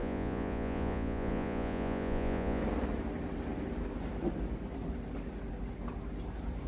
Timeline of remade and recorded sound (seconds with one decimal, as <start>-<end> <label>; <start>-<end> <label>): 0.0-2.6 remade; 2.6-6.7 recorded